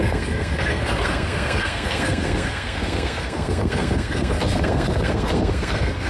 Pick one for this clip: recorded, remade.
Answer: remade